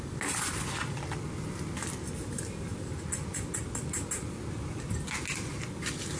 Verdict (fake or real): real